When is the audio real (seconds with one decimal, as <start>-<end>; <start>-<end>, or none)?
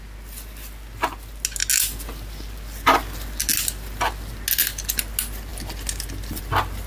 0.0-6.9